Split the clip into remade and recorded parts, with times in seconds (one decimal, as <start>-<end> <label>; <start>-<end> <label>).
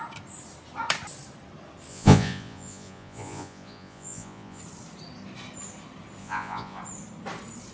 0.0-1.9 recorded; 1.9-4.6 remade; 4.6-6.2 recorded; 6.2-6.8 remade; 6.8-7.7 recorded